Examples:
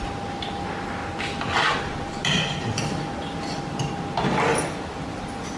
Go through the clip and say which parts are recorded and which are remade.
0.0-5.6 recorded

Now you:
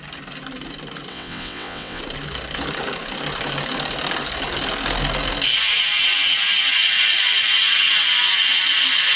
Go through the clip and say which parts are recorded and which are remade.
0.0-1.1 recorded; 1.1-2.0 remade; 2.0-9.2 recorded

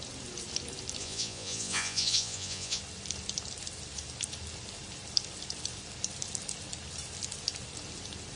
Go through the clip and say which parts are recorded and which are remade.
0.0-1.0 recorded; 1.0-2.8 remade; 2.8-8.4 recorded

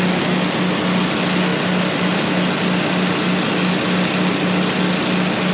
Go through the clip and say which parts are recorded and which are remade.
0.0-5.5 recorded